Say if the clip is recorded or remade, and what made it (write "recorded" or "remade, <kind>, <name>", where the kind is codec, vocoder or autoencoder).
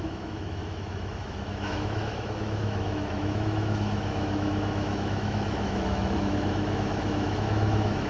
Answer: remade, autoencoder, DAC-VAE